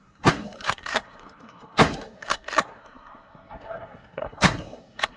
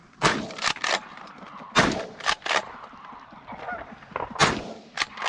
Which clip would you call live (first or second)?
second